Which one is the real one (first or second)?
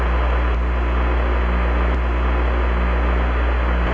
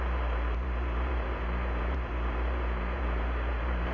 first